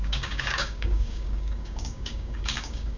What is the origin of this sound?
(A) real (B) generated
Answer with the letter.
B